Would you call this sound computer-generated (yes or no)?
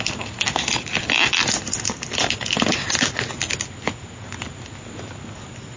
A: no